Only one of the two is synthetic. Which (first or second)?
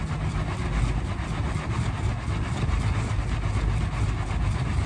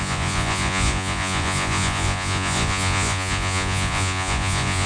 second